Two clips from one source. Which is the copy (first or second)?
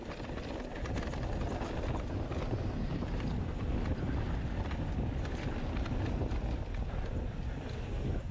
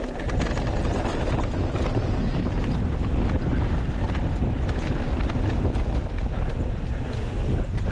first